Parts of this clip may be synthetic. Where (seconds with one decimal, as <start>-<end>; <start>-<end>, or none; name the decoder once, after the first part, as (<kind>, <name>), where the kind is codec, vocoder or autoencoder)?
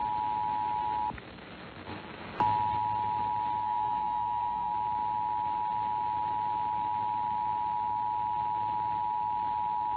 3.6-4.7 (codec, SNAC)